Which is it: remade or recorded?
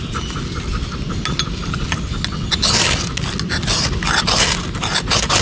recorded